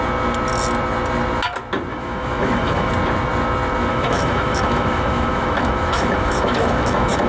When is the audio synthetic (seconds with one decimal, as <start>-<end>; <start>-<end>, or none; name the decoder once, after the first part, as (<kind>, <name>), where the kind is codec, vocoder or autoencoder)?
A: 1.9-2.9 (autoencoder, DAC-VAE); 3.9-7.3